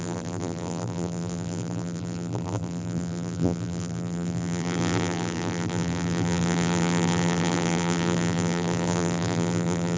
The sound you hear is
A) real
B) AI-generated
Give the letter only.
B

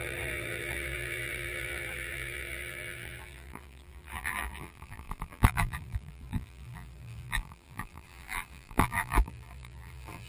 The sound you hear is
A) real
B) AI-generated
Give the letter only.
B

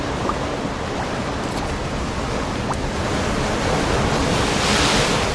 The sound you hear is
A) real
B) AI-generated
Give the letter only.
B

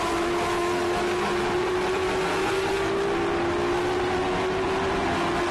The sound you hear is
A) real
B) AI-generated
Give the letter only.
A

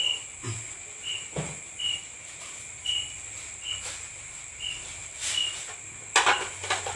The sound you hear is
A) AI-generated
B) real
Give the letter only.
B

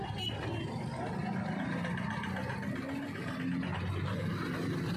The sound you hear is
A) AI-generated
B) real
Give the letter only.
B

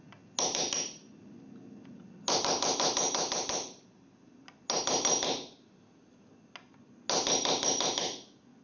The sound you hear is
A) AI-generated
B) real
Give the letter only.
B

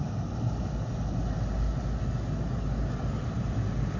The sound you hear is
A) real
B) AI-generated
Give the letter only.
A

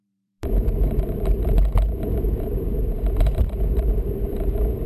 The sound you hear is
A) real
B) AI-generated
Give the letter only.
B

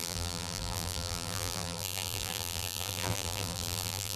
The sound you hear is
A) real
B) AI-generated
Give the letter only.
B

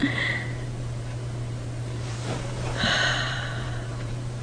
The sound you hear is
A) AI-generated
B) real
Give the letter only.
A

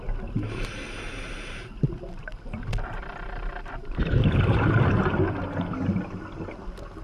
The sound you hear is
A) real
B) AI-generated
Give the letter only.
A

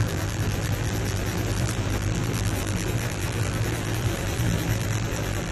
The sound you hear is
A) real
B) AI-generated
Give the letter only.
B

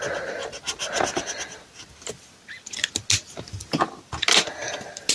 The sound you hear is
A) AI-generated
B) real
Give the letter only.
B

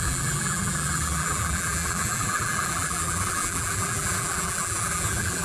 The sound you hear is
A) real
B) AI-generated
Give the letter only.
B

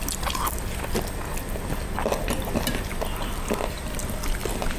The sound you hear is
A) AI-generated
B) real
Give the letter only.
B